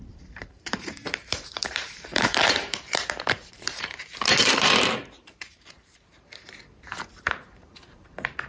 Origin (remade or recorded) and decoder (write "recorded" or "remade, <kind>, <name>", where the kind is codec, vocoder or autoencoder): remade, vocoder, BigVGAN v2